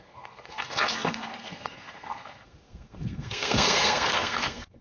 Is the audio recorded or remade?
remade